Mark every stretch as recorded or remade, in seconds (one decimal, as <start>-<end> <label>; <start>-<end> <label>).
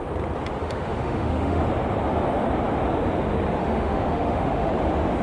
0.0-0.6 recorded; 0.6-1.6 remade; 1.6-3.6 recorded; 3.6-4.7 remade; 4.7-5.2 recorded